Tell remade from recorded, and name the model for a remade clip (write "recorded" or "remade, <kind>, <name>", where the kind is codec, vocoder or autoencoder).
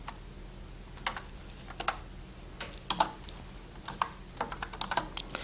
recorded